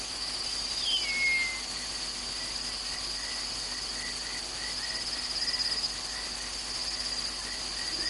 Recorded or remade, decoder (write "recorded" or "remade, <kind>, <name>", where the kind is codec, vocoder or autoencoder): recorded